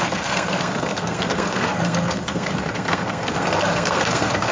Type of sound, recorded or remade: remade